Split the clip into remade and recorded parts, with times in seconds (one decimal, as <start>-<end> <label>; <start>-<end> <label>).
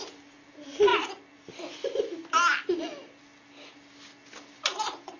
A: 0.0-5.2 recorded